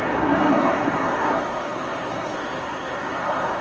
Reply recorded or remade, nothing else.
remade